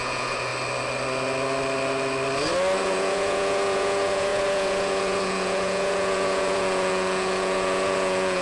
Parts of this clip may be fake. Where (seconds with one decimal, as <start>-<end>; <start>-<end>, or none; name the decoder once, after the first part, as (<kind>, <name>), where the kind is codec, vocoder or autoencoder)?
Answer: 0.0-0.5 (vocoder, Vocos); 2.8-8.4